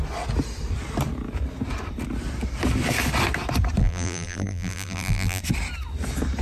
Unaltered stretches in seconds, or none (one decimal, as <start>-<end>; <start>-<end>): 0.0-3.8; 5.4-6.4